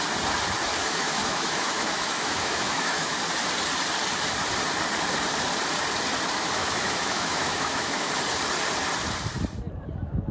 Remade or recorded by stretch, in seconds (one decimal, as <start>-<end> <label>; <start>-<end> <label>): 0.0-0.8 recorded; 0.8-3.2 remade; 3.2-6.6 recorded; 6.6-8.1 remade; 8.1-10.3 recorded